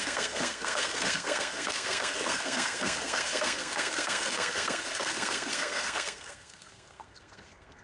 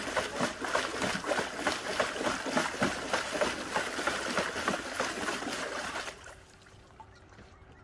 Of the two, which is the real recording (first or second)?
second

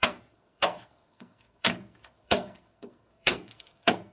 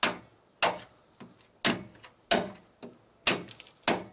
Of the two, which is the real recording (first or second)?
second